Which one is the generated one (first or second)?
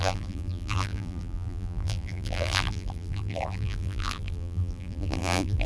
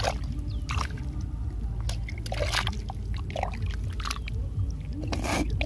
first